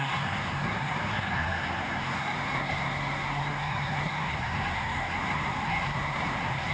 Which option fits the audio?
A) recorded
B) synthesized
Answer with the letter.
B